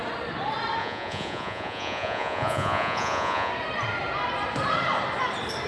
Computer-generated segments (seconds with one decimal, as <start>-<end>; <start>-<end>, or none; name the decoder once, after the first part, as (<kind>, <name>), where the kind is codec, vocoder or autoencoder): 0.8-3.5 (vocoder, Vocos)